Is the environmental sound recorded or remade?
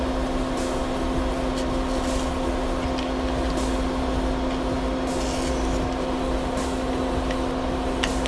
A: recorded